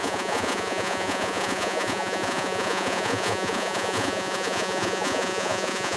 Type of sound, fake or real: fake